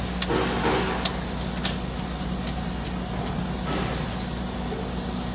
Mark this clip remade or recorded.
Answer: recorded